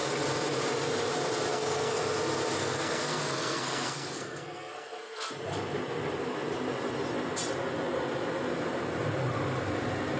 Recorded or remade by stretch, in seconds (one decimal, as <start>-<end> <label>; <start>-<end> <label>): 0.0-1.5 recorded; 1.5-2.0 remade; 2.0-2.6 recorded; 2.6-5.3 remade; 5.3-10.2 recorded